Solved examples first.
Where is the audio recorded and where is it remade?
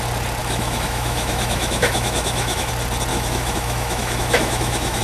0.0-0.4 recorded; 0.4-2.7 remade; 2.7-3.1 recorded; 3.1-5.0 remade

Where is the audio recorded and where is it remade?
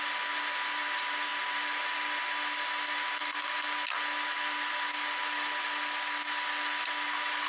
0.0-7.5 recorded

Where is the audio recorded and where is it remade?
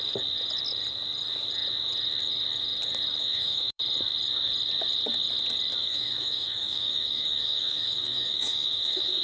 0.0-3.2 recorded; 3.2-3.8 remade; 3.8-5.8 recorded; 5.8-9.2 remade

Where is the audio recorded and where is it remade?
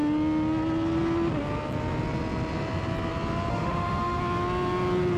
0.0-3.5 recorded; 3.5-4.2 remade; 4.2-5.2 recorded